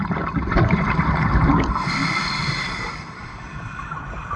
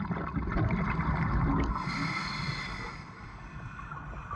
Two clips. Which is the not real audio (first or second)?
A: first